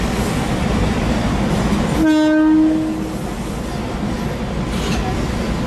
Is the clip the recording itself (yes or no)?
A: yes